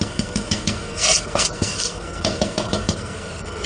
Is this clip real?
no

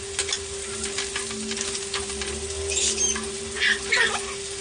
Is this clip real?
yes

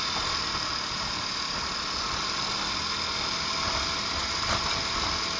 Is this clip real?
yes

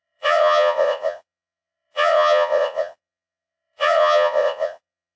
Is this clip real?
no